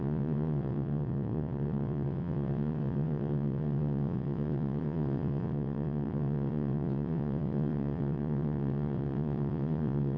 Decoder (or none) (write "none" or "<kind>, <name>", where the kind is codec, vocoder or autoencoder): vocoder, WaveNeXt